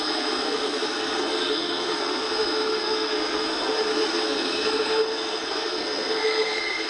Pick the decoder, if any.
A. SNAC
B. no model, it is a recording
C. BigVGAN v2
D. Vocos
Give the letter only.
A